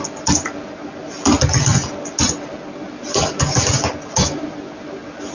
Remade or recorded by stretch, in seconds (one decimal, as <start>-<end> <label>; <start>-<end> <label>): 0.0-5.3 recorded